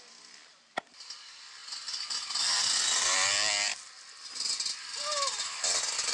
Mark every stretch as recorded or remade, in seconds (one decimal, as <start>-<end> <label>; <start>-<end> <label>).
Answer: 0.0-6.1 recorded